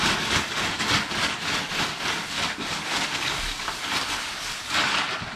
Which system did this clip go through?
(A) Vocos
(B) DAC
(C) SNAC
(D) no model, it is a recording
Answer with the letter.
B